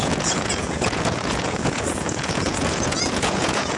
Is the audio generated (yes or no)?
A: yes